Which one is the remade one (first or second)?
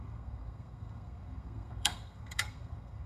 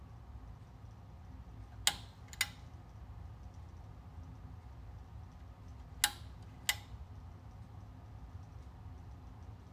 first